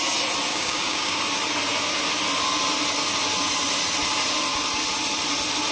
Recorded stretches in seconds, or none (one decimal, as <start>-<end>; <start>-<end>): 0.0-0.5; 1.2-5.7